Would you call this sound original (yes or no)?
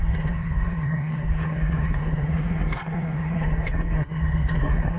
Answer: no